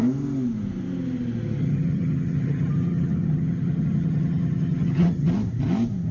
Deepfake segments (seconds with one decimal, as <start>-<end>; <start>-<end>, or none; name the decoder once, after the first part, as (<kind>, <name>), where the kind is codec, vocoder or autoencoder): 1.6-5.3 (vocoder, HiFi-GAN)